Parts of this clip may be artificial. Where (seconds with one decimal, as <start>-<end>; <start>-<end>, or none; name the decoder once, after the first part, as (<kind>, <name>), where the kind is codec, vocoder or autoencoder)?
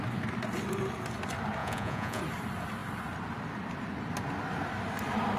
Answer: 1.6-2.2 (vocoder, Vocos)